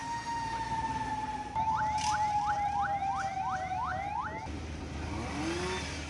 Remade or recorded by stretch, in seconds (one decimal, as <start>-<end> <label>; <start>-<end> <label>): 0.0-3.3 remade; 3.3-6.1 recorded